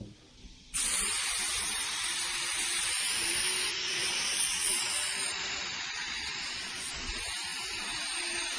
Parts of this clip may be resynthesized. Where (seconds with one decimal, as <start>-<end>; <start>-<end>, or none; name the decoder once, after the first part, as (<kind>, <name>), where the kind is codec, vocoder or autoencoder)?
3.7-6.9 (vocoder, Vocos)